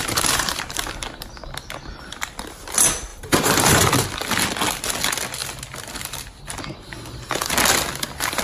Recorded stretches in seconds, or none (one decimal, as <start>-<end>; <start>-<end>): 0.8-3.1; 3.9-8.4